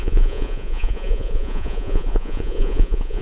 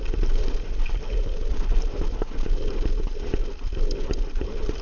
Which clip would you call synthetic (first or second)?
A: first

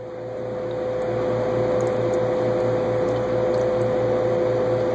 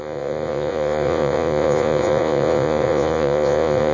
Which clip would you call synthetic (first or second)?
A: second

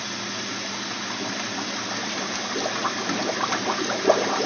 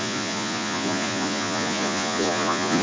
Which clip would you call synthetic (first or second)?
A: second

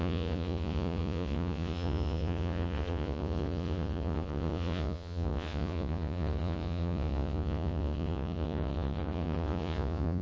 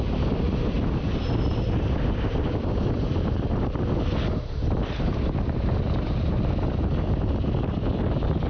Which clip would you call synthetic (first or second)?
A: first